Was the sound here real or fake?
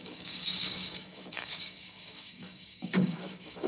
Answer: fake